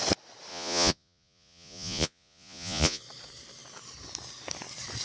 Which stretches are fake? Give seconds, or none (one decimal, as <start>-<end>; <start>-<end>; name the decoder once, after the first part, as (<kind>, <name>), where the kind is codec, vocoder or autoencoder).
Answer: 0.5-3.0 (vocoder, Vocos)